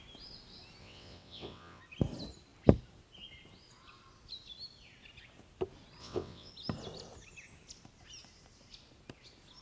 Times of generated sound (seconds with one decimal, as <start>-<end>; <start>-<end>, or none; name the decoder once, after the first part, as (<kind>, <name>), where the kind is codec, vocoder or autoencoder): 0.8-1.8 (vocoder, WaveNeXt); 6.0-6.5